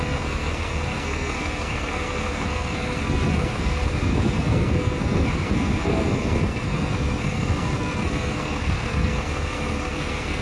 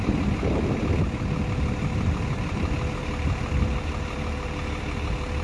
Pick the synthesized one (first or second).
first